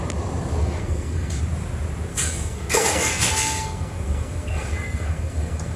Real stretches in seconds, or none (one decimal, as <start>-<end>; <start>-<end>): 0.0-0.6; 1.4-2.1